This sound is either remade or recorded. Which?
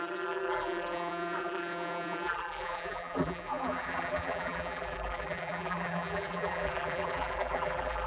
remade